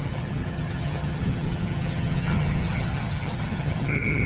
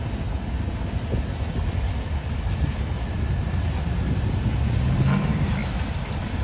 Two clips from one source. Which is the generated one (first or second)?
first